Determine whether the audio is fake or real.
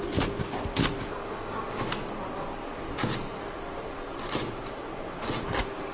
real